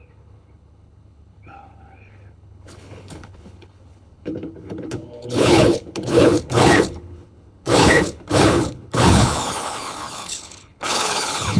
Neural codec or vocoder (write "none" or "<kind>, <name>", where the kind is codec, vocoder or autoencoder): codec, HILCodec